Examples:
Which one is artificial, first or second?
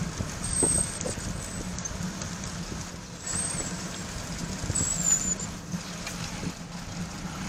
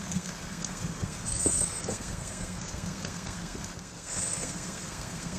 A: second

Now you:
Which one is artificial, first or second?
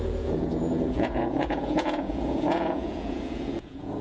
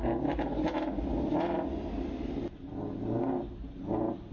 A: first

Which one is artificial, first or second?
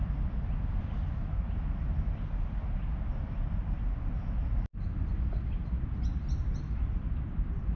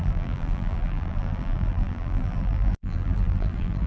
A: second